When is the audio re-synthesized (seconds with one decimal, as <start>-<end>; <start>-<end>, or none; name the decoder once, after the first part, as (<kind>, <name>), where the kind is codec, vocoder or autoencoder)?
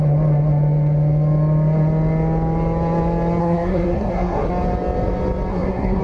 3.4-4.5 (codec, SNAC); 5.5-6.0